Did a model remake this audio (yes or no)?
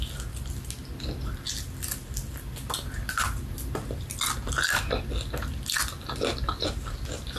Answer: no